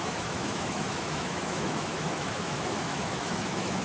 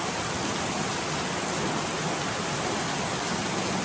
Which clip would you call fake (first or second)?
first